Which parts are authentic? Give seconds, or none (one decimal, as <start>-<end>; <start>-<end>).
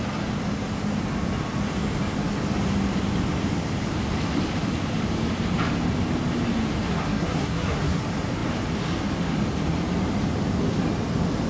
0.0-6.9; 8.0-11.5